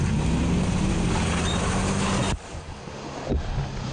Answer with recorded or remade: recorded